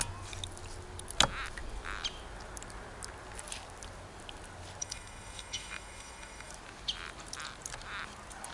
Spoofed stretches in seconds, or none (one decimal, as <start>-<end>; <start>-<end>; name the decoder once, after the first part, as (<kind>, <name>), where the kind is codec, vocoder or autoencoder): 4.8-6.5 (autoencoder, DAC-VAE)